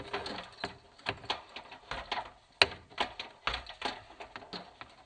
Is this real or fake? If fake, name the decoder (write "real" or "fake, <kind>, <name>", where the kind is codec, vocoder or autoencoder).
real